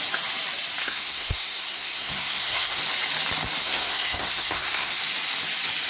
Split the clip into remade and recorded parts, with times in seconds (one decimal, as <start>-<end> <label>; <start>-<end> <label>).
0.0-0.8 recorded; 0.8-2.8 remade; 2.8-3.6 recorded; 3.6-5.0 remade; 5.0-5.9 recorded